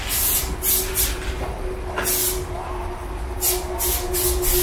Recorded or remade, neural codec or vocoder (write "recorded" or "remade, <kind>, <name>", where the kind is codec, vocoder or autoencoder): recorded